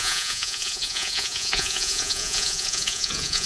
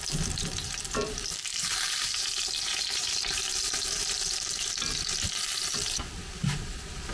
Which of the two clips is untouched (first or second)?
second